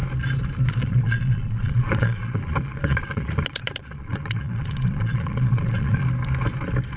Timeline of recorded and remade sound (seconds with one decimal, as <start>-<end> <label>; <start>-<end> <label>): 0.0-0.7 recorded; 0.7-6.0 remade; 6.0-7.0 recorded